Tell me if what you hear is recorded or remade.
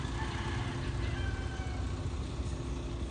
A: recorded